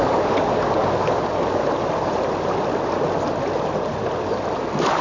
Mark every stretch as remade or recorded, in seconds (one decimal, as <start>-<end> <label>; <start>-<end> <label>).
0.0-1.6 remade; 1.6-4.6 recorded; 4.6-5.0 remade